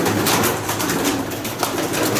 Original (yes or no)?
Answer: yes